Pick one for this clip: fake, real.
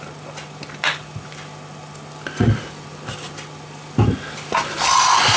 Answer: real